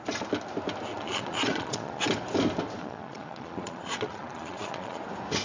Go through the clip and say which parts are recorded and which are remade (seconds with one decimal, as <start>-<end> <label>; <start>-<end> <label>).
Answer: 0.0-0.9 recorded; 0.9-2.0 remade; 2.0-2.8 recorded; 2.8-5.0 remade; 5.0-5.4 recorded